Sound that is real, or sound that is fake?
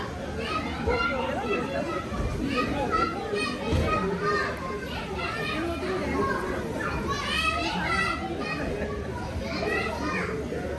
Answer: real